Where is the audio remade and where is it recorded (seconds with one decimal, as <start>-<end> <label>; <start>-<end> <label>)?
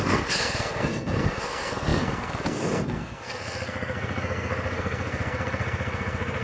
0.0-6.4 remade